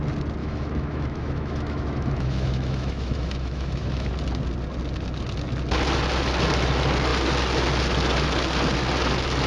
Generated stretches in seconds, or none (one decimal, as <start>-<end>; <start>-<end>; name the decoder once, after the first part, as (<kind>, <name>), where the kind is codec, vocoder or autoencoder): 0.4-4.1 (autoencoder, DAC-VAE)